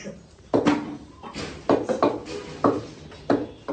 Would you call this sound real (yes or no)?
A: yes